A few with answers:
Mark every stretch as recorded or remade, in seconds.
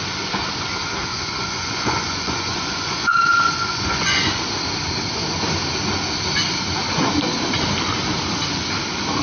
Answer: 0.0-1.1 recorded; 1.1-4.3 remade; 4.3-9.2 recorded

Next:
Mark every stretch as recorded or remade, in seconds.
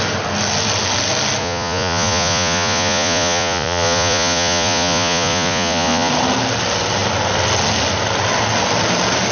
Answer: 0.0-1.4 recorded; 1.4-6.1 remade; 6.1-9.3 recorded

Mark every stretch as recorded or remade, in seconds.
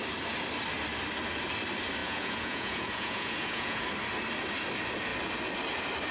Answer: 0.0-2.0 recorded; 2.0-3.8 remade; 3.8-6.1 recorded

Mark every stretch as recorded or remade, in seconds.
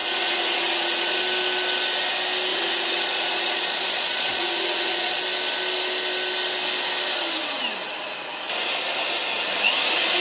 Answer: 0.0-1.2 remade; 1.2-2.5 recorded; 2.5-5.2 remade; 5.2-10.2 recorded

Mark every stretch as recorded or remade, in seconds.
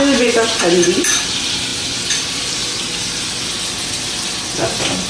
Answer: 0.0-5.1 recorded